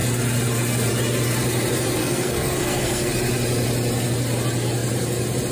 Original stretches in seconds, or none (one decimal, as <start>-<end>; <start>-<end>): 0.0-2.0; 3.1-5.5